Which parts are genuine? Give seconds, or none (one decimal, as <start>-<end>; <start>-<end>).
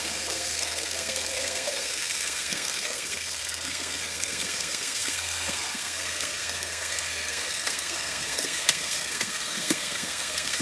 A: none